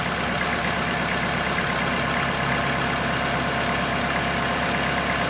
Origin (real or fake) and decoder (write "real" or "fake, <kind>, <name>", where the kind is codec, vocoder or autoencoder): real